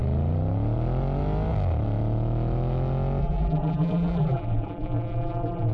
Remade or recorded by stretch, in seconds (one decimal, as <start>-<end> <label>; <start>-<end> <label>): 0.0-3.2 recorded; 3.2-5.7 remade